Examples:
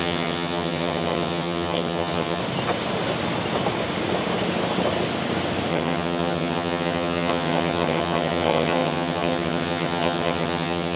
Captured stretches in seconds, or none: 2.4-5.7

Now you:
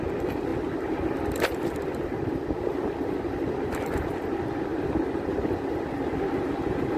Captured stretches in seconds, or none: 0.0-0.5; 4.1-7.0